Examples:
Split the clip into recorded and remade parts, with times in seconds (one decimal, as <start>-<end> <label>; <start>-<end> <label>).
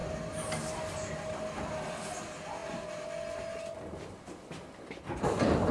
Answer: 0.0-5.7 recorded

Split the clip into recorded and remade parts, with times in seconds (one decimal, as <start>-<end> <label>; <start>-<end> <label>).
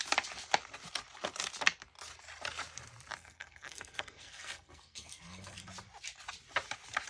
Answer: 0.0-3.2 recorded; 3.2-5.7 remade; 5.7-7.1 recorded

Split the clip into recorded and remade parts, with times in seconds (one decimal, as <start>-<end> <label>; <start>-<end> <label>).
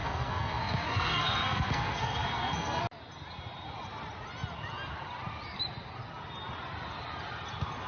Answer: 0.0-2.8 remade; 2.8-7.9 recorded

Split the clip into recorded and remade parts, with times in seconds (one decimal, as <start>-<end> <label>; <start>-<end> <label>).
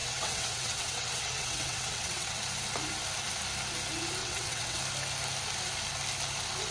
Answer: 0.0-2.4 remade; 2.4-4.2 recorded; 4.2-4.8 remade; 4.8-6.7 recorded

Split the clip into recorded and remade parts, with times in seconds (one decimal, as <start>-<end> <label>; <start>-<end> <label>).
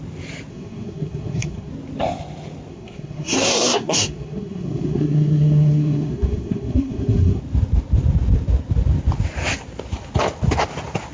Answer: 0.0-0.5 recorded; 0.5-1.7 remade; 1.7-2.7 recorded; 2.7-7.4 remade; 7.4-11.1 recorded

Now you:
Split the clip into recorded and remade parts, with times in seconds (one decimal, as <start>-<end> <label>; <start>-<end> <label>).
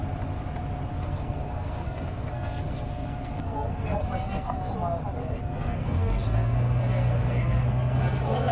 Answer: 0.0-0.9 recorded; 0.9-4.7 remade; 4.7-5.2 recorded; 5.2-8.5 remade